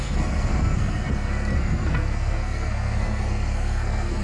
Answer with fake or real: fake